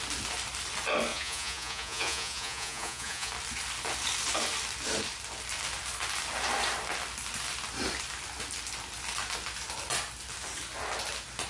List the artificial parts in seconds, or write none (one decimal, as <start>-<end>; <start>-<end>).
1.1-3.3